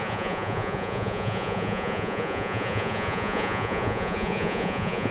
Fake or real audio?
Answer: fake